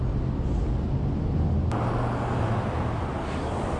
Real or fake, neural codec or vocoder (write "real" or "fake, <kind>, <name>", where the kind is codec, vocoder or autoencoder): real